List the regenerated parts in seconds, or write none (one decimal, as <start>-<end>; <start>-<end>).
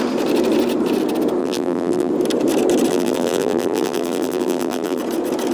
1.4-2.1; 2.9-5.0